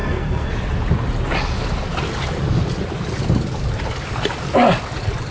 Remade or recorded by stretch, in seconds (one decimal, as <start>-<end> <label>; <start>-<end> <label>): 0.0-0.5 remade; 0.5-5.3 recorded